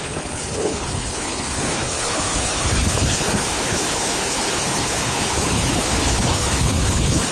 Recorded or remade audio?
remade